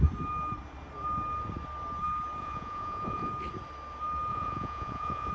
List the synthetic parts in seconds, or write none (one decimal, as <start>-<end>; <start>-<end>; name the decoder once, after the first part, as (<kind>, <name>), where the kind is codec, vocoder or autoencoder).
2.4-3.3 (vocoder, Vocos); 4.3-5.3